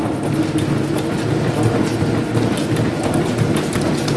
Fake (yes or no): no